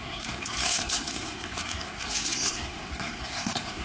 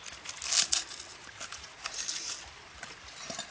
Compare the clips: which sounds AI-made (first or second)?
first